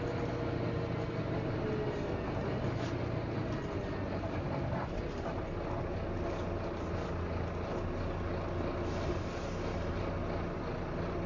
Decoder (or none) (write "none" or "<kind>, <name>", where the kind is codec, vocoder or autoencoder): none